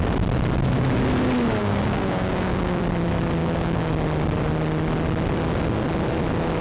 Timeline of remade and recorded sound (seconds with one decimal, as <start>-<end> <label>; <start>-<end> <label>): 0.0-1.6 recorded; 1.6-2.8 remade; 2.8-3.4 recorded; 3.4-3.9 remade; 3.9-6.6 recorded